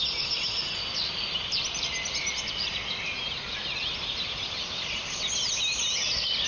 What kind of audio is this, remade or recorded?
recorded